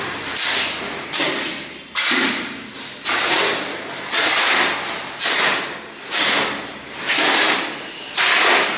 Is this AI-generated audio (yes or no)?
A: yes